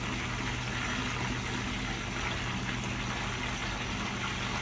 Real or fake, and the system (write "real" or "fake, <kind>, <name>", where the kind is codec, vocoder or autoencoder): real